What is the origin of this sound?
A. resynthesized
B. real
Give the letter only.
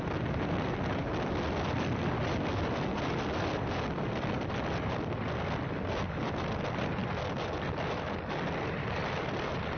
B